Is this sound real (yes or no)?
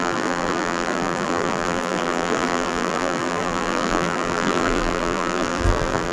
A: no